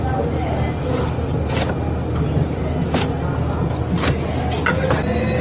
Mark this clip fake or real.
real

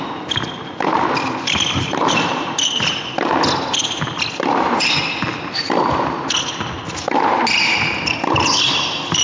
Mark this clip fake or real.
real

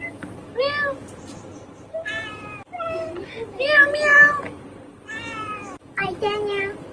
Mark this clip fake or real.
fake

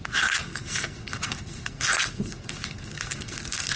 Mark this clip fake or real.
fake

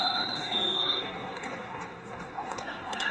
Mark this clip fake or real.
fake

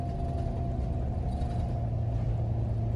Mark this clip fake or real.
real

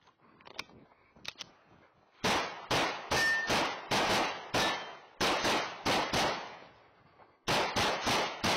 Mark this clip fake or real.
real